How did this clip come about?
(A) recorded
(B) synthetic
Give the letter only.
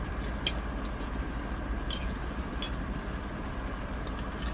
A